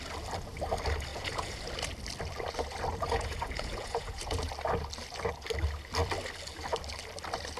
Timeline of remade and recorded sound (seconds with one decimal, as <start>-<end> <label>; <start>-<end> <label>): 0.0-1.1 recorded; 1.1-1.6 remade; 1.6-2.9 recorded; 2.9-4.5 remade; 4.5-7.6 recorded